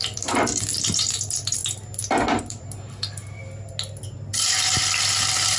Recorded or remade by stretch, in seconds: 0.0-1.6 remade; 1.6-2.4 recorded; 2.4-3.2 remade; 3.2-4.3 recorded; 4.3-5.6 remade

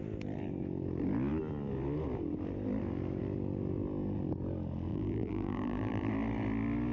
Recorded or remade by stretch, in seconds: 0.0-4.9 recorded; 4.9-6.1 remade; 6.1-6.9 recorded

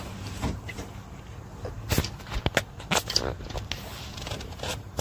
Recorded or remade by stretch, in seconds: 0.0-1.0 remade; 1.0-4.0 recorded; 4.0-5.0 remade

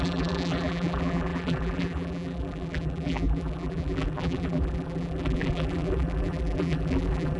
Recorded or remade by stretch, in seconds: 0.0-7.4 remade